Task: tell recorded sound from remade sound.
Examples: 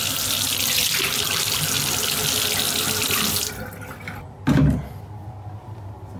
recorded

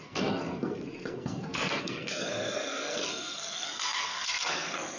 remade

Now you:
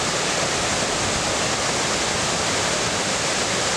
recorded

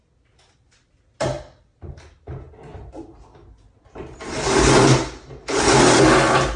recorded